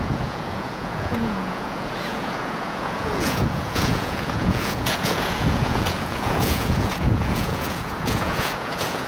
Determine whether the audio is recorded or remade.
remade